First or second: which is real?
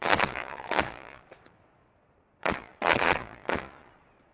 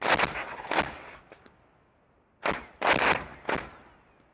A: second